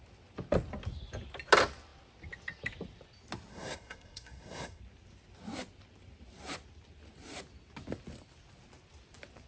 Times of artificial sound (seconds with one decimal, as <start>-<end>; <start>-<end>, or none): 3.5-4.8